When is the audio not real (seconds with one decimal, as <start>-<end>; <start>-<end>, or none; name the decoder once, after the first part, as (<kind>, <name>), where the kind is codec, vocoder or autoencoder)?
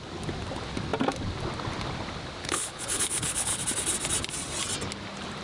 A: 2.4-3.6 (codec, HILCodec)